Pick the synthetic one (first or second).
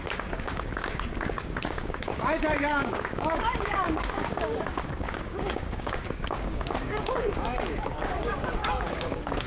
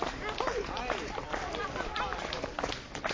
first